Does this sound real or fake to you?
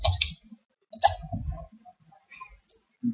real